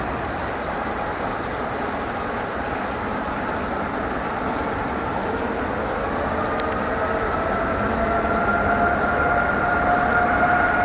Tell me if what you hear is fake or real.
real